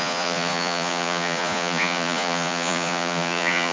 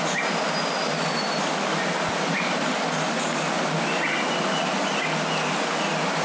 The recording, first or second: second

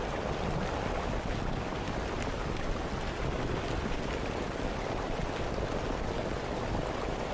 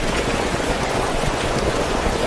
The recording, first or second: first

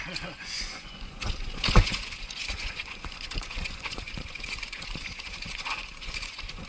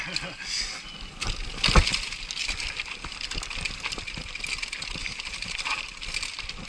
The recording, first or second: second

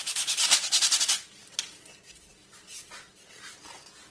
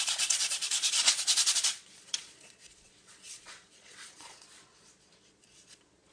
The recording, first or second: first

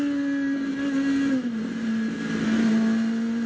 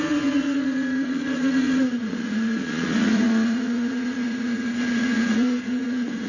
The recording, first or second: first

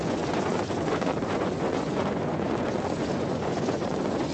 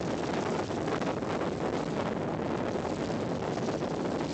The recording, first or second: second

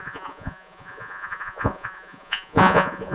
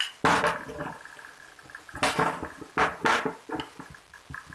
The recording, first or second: second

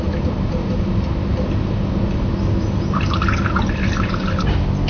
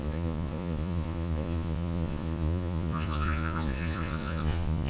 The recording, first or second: first